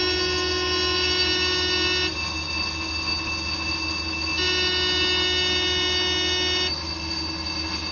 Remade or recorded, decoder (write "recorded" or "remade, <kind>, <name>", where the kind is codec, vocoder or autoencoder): recorded